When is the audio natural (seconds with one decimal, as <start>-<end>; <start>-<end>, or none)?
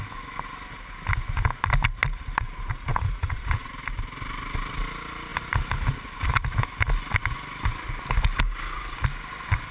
0.0-2.9; 3.7-9.7